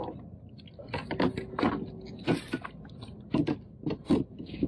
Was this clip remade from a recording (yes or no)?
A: no